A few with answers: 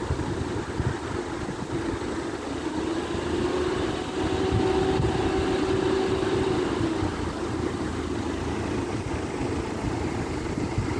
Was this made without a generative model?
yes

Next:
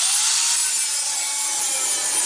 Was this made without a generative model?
yes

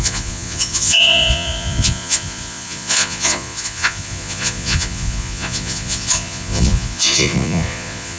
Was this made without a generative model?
no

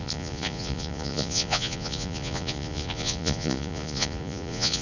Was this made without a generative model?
no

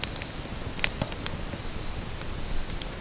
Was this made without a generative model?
yes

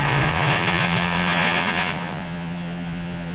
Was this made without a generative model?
no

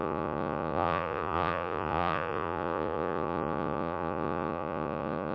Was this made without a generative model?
no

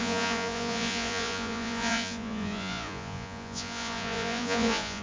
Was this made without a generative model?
no